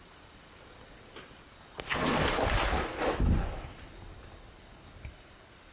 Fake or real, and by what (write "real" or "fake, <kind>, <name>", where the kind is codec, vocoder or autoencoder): real